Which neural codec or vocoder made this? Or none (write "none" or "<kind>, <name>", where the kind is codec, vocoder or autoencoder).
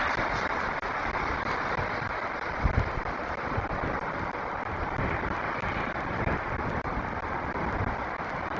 vocoder, BigVGAN v2